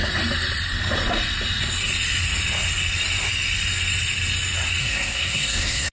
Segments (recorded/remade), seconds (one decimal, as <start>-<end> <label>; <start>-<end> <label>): 0.0-4.8 recorded; 4.8-5.9 remade